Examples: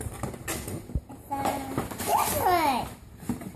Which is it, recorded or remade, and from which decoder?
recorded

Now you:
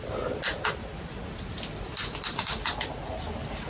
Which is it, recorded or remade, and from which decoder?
recorded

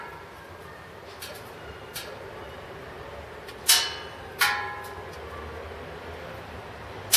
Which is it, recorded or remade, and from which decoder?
recorded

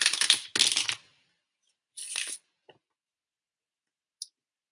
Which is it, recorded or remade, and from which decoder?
recorded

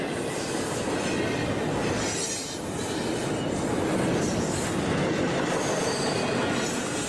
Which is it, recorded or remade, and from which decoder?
recorded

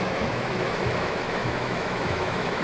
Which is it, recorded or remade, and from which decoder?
remade, autoencoder, DAC-VAE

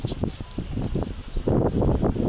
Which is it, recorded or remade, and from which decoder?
recorded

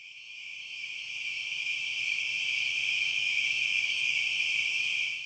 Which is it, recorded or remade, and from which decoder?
remade, autoencoder, DAC-VAE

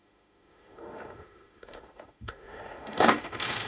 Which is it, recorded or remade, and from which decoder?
remade, autoencoder, DAC-VAE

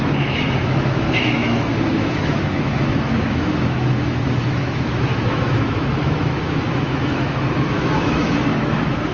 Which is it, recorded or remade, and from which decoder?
remade, autoencoder, DAC-VAE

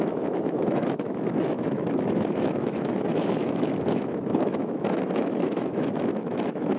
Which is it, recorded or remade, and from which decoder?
remade, autoencoder, DAC-VAE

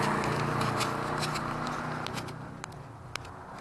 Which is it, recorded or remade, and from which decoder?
recorded